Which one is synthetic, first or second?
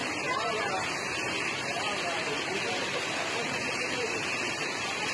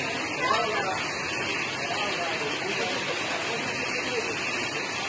first